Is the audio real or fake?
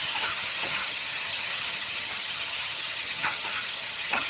fake